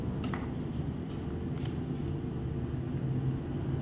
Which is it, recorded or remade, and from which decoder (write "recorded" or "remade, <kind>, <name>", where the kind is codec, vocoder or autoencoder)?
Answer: recorded